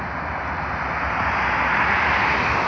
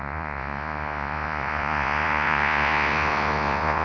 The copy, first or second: second